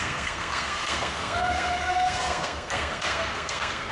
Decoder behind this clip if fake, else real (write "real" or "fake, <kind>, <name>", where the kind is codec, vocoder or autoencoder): fake, codec, SNAC